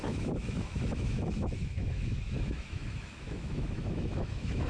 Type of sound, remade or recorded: remade